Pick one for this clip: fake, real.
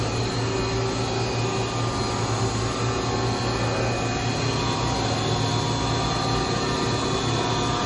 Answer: real